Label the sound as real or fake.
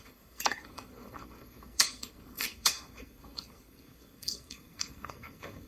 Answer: fake